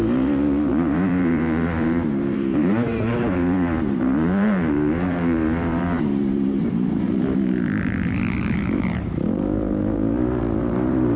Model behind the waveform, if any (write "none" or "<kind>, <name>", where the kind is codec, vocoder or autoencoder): vocoder, BigVGAN v2